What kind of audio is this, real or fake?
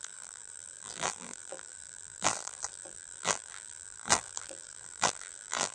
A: fake